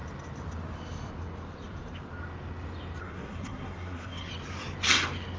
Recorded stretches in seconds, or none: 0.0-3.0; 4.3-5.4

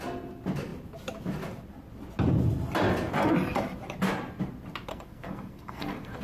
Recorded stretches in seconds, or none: 0.0-4.9

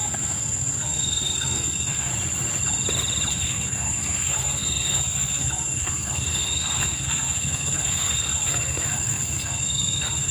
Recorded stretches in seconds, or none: 2.1-3.3

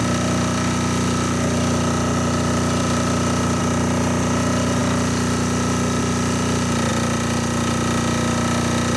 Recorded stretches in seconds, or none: 0.0-9.0

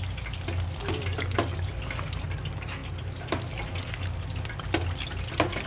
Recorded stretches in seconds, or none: 0.0-5.7

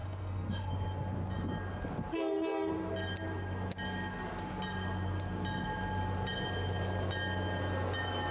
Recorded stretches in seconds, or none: 0.7-8.3

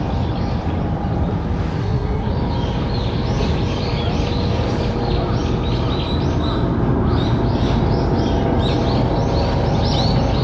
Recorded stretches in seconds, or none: 0.0-1.8; 2.3-10.4